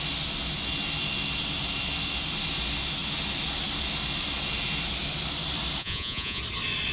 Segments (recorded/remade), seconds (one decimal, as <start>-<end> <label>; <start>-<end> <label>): 0.0-5.8 recorded; 5.8-6.4 remade; 6.4-6.9 recorded